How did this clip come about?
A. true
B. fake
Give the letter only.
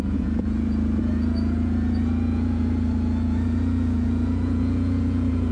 B